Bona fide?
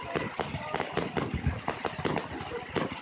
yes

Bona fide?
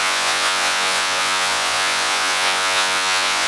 no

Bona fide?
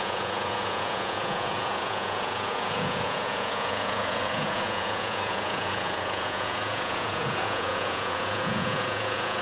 no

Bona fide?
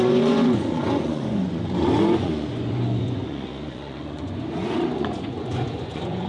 no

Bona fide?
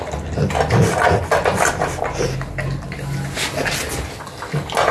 yes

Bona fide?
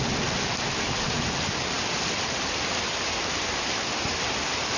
yes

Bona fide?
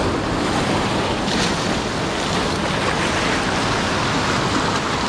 yes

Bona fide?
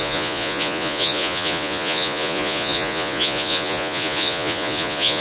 no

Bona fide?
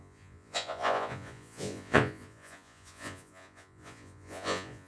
no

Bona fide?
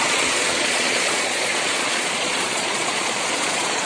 no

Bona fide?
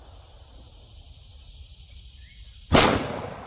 yes